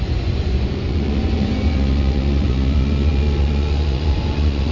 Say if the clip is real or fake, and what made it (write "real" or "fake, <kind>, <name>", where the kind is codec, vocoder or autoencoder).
fake, vocoder, Vocos